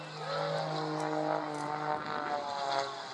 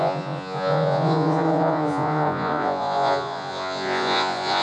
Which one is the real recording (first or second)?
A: first